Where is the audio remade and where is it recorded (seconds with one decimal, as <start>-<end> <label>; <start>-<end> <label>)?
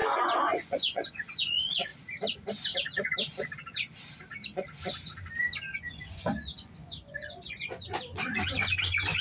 0.0-1.9 remade; 1.9-5.8 recorded; 5.8-9.2 remade